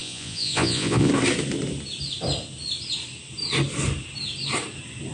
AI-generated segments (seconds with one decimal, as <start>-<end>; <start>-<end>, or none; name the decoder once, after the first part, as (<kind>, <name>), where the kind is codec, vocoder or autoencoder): 0.0-1.1 (vocoder, Vocos)